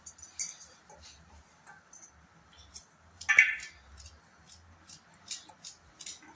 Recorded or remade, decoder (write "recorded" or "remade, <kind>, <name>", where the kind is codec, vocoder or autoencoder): recorded